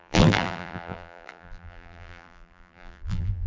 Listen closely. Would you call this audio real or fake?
fake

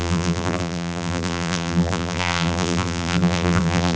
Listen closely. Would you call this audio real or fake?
fake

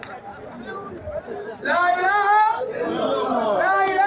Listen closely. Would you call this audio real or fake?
real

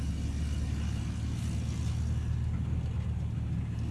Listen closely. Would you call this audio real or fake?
real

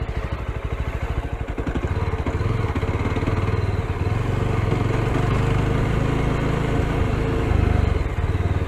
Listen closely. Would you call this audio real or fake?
real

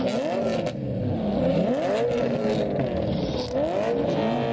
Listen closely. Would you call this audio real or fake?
real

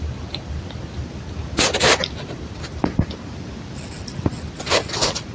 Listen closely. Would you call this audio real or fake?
fake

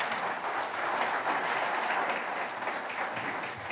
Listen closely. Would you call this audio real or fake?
real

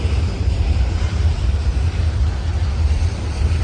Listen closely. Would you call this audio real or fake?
fake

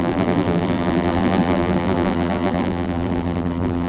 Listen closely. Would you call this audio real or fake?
fake